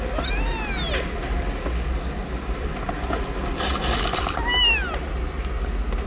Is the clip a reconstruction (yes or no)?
no